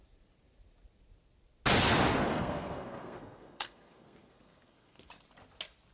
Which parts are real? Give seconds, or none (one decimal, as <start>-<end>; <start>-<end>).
0.0-2.3; 5.1-5.9